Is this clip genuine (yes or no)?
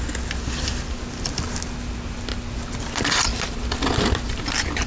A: yes